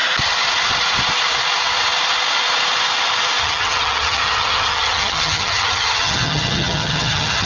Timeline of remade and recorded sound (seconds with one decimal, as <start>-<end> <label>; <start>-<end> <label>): 0.0-3.4 recorded; 3.4-7.5 remade